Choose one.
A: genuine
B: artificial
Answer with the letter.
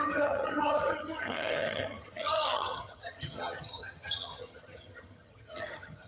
B